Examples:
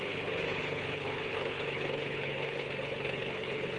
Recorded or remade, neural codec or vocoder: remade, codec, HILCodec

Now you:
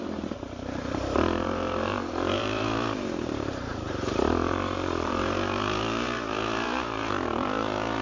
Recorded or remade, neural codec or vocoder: remade, vocoder, BigVGAN v2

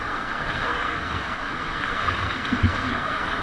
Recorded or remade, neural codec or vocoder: remade, codec, SNAC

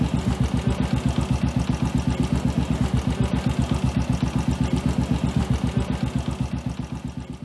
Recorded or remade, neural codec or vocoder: recorded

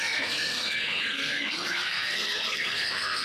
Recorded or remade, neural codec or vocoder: remade, codec, SNAC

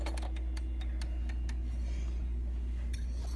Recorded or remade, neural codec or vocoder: recorded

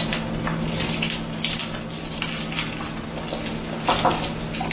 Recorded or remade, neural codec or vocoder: recorded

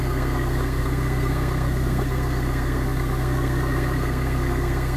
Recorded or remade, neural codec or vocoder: remade, codec, SNAC